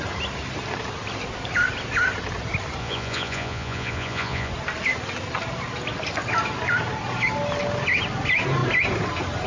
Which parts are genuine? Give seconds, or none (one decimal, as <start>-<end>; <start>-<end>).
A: 0.0-2.8; 4.5-9.5